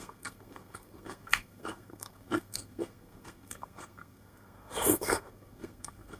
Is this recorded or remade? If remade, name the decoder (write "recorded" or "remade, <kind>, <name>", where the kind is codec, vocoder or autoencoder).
remade, codec, SNAC